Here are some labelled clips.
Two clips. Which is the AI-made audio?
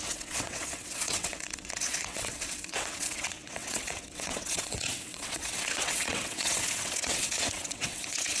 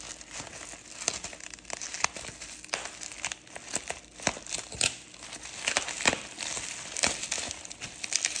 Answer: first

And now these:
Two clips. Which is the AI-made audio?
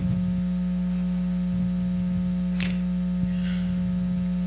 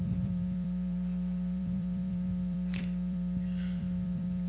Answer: second